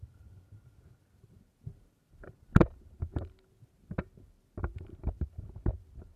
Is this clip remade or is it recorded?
recorded